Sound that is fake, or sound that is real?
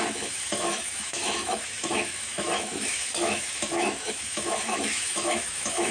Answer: fake